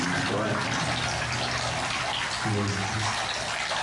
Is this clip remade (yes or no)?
no